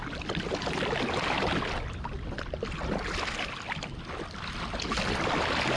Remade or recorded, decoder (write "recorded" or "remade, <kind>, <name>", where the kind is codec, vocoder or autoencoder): recorded